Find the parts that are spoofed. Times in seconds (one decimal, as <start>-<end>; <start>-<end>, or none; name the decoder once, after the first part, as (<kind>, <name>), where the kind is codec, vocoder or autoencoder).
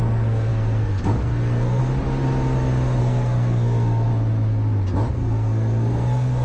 0.0-1.8 (codec, SNAC); 3.0-4.1; 5.1-6.4